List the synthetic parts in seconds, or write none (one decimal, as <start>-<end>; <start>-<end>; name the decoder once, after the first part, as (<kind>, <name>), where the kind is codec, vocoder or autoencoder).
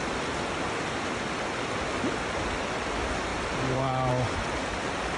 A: none